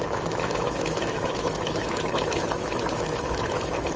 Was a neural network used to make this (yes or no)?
yes